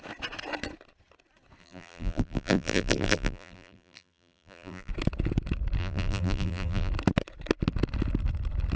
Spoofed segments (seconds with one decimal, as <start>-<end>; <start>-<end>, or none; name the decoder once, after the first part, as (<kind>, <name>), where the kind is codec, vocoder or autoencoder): 1.6-4.9 (vocoder, BigVGAN v2); 5.8-6.9